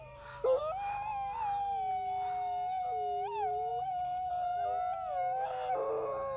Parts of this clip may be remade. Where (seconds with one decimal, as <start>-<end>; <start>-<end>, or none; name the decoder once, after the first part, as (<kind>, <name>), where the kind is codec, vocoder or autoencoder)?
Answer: none